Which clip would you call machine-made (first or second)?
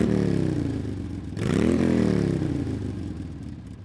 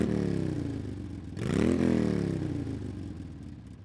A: first